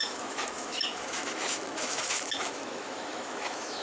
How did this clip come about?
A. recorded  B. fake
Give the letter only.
B